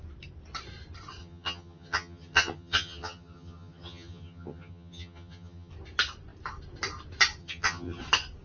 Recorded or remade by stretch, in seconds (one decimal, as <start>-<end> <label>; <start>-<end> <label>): 0.0-1.2 recorded; 1.2-5.7 remade; 5.7-7.4 recorded; 7.4-8.0 remade; 8.0-8.4 recorded